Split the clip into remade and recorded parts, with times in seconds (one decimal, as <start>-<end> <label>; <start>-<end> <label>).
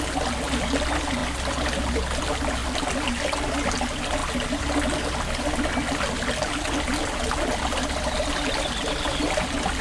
0.0-9.8 recorded